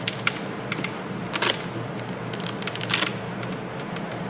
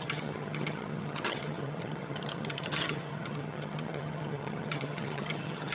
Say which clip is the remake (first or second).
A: second